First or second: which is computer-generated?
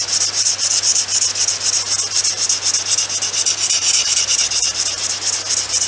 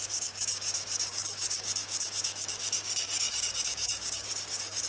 second